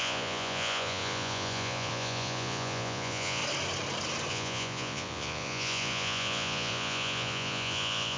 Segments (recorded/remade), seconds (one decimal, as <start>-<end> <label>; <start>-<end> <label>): 0.0-3.4 remade; 3.4-4.3 recorded; 4.3-8.2 remade